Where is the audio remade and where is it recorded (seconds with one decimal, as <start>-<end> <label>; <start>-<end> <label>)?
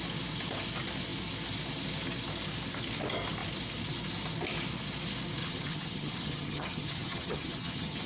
0.0-5.4 recorded; 5.4-8.1 remade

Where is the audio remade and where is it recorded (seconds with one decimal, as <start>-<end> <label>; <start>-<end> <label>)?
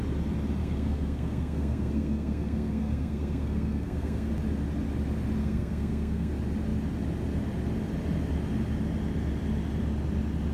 0.0-0.6 recorded; 0.6-4.3 remade; 4.3-5.4 recorded; 5.4-6.3 remade; 6.3-10.5 recorded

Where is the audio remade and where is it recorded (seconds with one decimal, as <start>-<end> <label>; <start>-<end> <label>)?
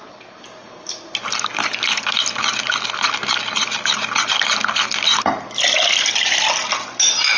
0.0-7.4 recorded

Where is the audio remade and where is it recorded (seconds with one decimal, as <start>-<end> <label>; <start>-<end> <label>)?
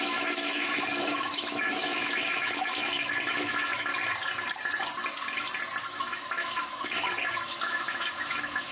0.0-3.9 remade; 3.9-5.9 recorded; 5.9-8.7 remade